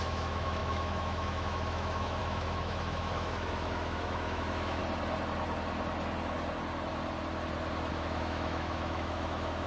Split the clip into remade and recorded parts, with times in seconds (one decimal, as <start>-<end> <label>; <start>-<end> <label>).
0.0-4.8 remade; 4.8-7.9 recorded; 7.9-9.7 remade